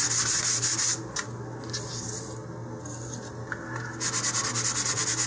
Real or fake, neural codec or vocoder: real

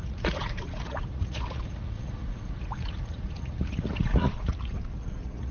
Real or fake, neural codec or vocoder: fake, vocoder, Vocos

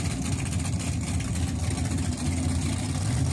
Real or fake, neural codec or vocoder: real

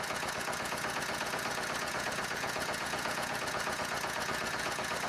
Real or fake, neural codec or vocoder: fake, vocoder, Vocos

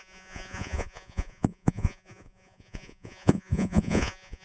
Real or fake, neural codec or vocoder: fake, vocoder, Vocos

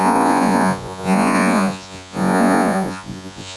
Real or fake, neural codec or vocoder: fake, vocoder, Vocos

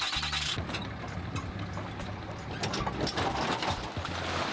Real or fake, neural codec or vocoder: real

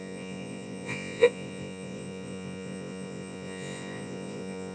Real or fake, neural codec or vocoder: fake, vocoder, Vocos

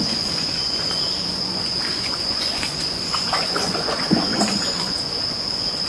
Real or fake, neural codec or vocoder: fake, vocoder, Vocos